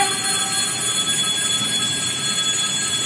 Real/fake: real